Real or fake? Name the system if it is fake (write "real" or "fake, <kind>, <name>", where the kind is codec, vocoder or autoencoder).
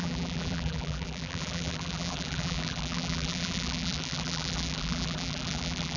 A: fake, vocoder, BigVGAN v2